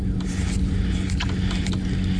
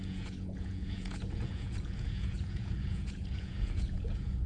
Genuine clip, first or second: first